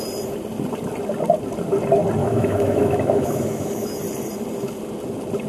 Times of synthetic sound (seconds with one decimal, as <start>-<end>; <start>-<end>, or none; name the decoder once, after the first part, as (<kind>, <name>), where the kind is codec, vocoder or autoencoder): 2.2-4.0 (autoencoder, DAC-VAE)

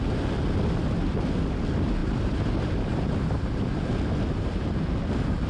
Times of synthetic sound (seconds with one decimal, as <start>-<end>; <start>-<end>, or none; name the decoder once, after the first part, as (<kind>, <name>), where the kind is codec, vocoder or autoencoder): 2.0-3.8 (vocoder, BigVGAN v2)